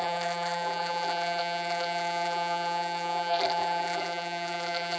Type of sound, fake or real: fake